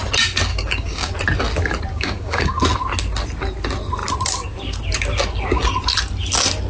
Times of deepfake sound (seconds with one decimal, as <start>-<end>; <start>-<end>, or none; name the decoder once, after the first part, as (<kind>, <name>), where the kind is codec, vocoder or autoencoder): 0.5-1.1 (codec, DAC); 1.9-2.6